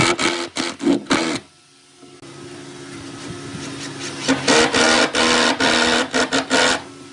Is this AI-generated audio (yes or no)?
no